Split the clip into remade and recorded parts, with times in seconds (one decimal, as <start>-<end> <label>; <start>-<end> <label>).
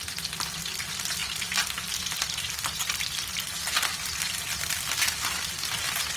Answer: 0.0-6.2 recorded